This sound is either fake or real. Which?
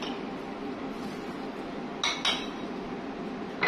real